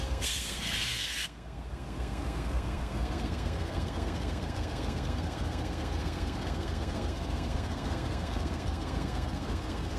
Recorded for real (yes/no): no